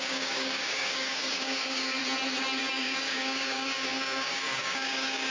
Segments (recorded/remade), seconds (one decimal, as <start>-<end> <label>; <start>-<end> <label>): 0.0-2.0 remade; 2.0-2.6 recorded; 2.6-5.3 remade